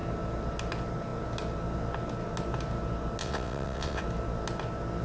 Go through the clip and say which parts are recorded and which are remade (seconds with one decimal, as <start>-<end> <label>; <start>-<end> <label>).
0.0-3.2 recorded; 3.2-4.0 remade; 4.0-5.0 recorded